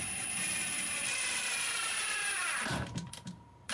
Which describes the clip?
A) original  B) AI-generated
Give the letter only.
B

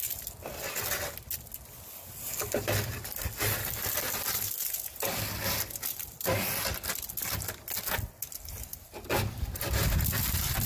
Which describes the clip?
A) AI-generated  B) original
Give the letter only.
B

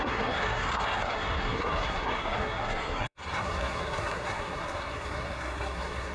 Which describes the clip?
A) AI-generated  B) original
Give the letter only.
A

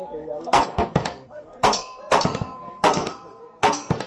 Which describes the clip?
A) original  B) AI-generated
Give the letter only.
B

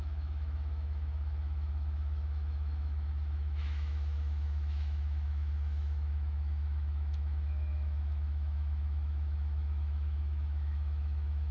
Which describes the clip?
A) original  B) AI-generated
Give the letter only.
B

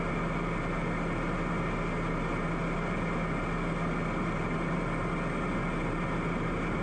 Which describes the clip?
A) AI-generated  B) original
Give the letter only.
B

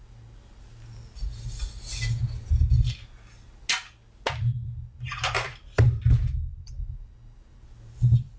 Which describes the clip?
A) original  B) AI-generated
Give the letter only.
A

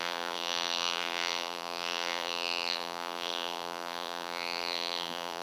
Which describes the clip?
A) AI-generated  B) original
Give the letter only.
A